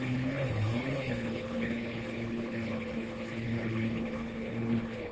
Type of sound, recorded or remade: remade